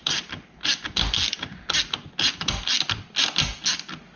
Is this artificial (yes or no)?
no